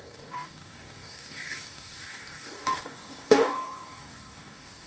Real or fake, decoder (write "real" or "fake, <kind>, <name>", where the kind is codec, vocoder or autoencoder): fake, codec, DAC